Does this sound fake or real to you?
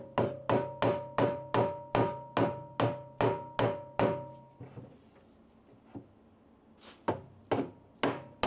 real